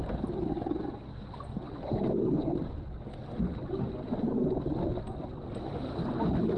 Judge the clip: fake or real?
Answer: real